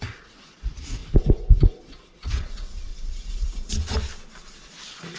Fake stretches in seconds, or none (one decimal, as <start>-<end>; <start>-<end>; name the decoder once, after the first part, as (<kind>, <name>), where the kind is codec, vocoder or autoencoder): 0.0-1.0 (vocoder, Vocos); 1.8-2.9; 4.8-5.2